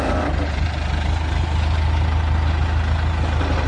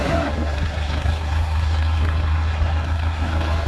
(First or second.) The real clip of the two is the first